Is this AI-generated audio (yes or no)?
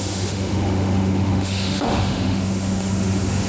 yes